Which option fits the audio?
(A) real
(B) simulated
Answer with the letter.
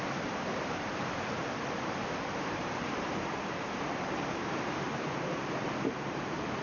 B